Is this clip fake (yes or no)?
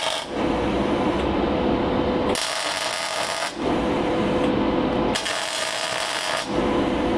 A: no